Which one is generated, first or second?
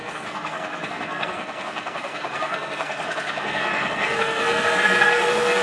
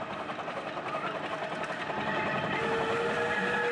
first